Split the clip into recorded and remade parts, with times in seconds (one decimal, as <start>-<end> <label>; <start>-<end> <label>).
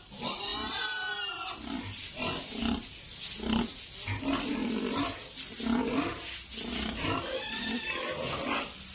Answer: 0.0-8.9 recorded